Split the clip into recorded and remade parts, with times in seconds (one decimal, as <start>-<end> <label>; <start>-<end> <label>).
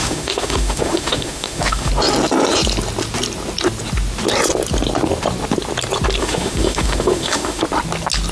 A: 0.0-1.9 remade; 1.9-6.2 recorded; 6.2-7.6 remade; 7.6-8.3 recorded